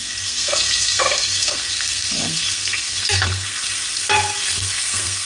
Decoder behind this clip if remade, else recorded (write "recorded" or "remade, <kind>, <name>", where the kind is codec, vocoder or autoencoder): remade, codec, SNAC